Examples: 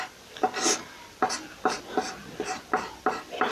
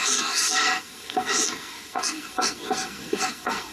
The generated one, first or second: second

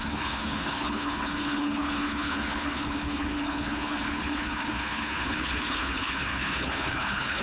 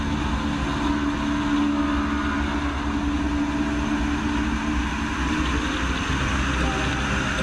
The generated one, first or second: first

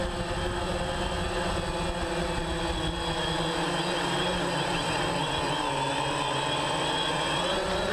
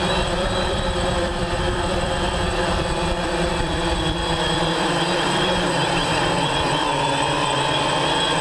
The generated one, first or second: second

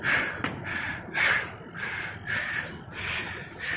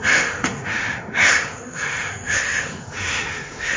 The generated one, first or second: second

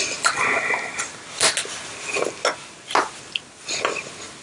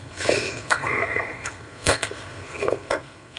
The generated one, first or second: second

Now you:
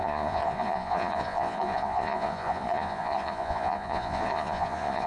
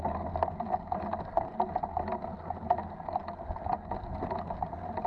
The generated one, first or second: first